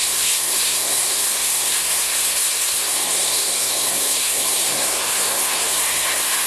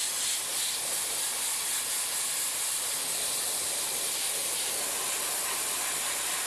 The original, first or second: second